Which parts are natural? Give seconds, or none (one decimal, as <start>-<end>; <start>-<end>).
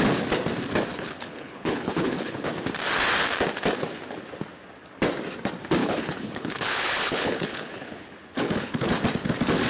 0.0-0.9; 2.5-5.8; 8.9-9.7